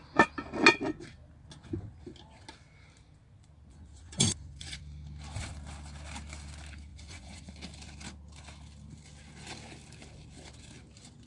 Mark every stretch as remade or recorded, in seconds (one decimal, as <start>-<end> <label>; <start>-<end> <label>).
0.0-3.7 recorded; 3.7-4.8 remade; 4.8-6.9 recorded; 6.9-7.5 remade; 7.5-11.3 recorded